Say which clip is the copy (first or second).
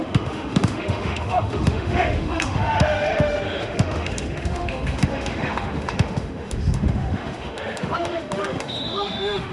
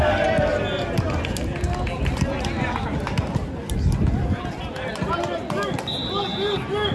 first